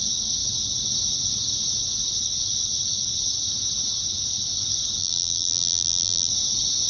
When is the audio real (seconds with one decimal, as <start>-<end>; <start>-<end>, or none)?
0.0-5.0; 6.3-6.9